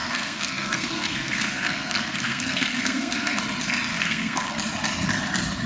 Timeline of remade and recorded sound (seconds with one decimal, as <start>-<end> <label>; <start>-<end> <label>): 0.0-3.4 remade; 3.4-3.9 recorded; 3.9-4.5 remade; 4.5-5.7 recorded